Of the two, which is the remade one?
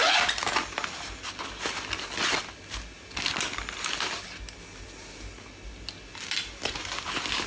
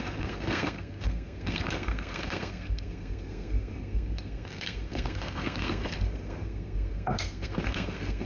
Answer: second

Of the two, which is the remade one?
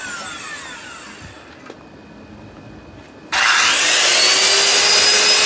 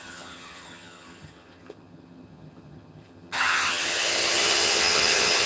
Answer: second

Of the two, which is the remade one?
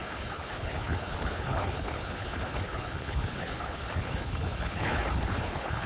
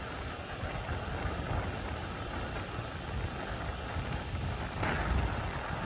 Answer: first